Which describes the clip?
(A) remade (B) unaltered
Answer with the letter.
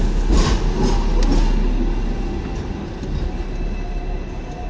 B